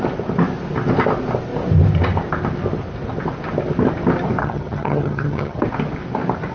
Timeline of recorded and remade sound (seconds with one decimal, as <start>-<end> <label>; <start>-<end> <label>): 0.0-4.4 recorded; 4.4-5.6 remade; 5.6-6.5 recorded